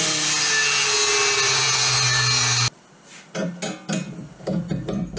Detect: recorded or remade recorded